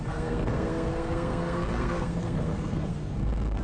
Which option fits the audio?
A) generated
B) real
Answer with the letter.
A